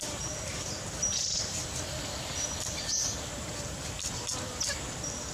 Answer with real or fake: fake